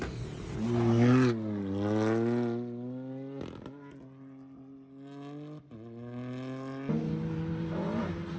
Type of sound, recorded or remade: recorded